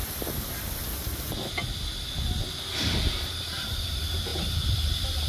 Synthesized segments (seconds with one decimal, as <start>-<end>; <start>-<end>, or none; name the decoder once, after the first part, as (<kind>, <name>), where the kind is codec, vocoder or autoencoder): 3.2-5.3 (vocoder, BigVGAN v2)